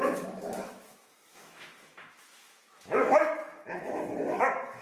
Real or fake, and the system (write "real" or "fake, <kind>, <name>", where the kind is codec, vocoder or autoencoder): fake, autoencoder, DAC-VAE